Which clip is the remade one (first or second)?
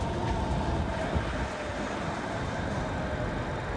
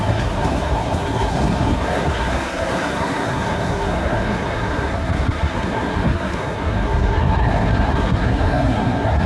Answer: second